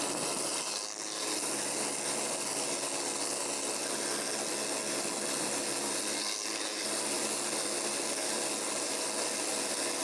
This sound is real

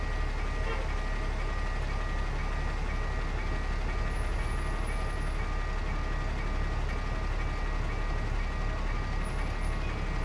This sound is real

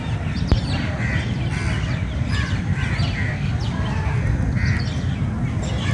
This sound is real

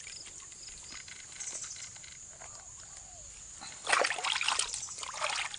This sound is real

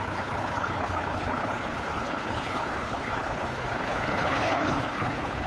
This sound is fake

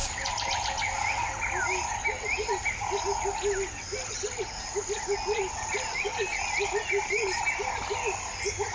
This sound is real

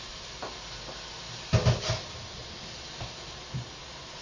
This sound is real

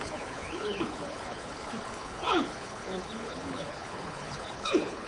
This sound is fake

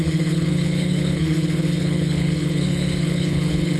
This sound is fake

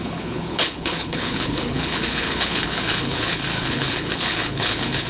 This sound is fake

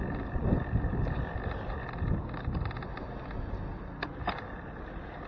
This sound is real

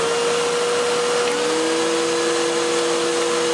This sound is real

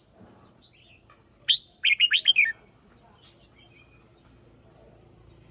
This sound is real